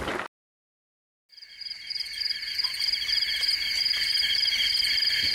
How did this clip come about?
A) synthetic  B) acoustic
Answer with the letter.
B